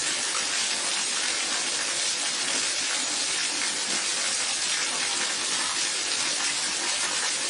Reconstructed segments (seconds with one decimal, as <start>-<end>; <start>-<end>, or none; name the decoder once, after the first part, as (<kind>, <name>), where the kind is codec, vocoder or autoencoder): none

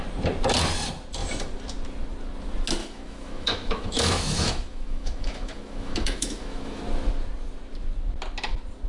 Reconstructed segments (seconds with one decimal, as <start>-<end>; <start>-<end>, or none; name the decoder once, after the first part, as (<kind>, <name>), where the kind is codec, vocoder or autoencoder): 2.8-6.8 (autoencoder, DAC-VAE)

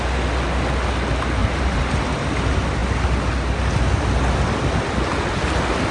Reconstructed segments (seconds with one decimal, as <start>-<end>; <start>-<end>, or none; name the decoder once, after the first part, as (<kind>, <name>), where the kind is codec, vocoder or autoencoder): 1.4-1.9 (vocoder, BigVGAN v2)

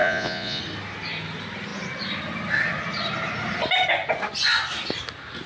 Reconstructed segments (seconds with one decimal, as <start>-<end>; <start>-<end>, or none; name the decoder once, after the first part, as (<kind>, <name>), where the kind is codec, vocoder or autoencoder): 0.0-0.6 (vocoder, Vocos)

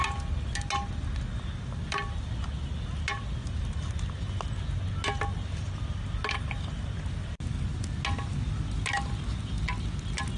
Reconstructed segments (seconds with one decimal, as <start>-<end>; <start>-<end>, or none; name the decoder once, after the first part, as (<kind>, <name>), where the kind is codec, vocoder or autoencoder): none

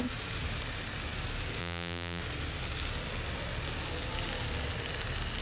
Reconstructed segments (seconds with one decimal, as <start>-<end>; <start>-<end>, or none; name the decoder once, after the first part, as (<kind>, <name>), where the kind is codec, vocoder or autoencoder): 1.6-2.2 (vocoder, BigVGAN v2)

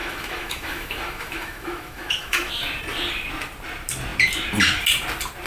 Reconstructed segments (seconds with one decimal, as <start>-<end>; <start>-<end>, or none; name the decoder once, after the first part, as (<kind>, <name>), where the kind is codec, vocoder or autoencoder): 0.0-2.5 (autoencoder, DAC-VAE)

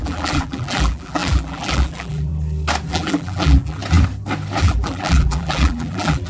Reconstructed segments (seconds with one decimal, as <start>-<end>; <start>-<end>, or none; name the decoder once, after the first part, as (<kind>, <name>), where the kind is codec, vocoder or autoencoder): 0.0-2.3 (vocoder, BigVGAN v2); 2.9-3.8; 4.6-6.3